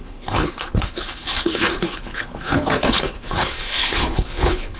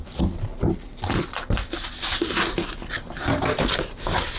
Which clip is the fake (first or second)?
first